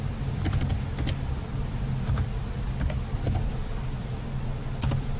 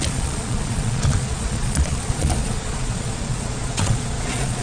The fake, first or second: second